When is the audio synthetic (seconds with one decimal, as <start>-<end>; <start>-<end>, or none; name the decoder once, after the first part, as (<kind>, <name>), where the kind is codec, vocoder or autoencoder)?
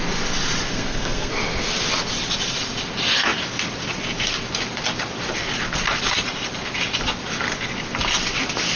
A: 0.7-1.3 (codec, SNAC)